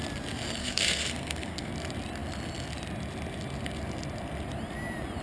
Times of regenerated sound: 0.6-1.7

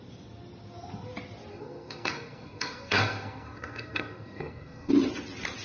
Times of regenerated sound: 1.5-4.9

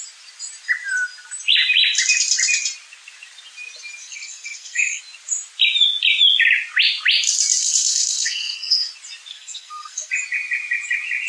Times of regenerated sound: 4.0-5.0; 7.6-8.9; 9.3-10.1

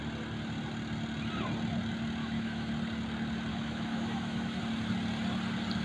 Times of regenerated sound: 2.2-2.7; 3.5-4.6

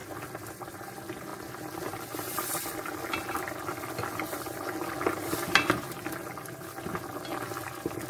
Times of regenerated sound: none